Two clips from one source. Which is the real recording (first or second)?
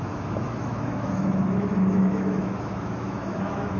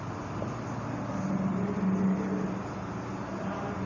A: second